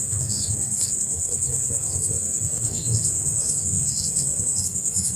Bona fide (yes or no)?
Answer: no